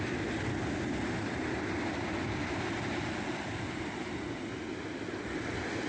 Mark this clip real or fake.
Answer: real